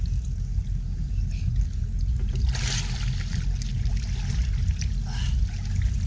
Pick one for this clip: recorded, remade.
recorded